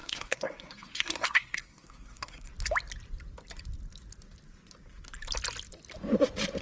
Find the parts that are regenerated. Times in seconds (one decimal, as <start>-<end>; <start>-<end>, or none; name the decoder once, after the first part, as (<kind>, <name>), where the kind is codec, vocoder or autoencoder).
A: 0.0-2.5 (codec, SNAC)